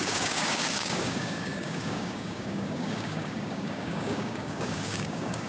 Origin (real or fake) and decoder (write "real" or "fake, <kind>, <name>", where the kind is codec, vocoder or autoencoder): fake, codec, DAC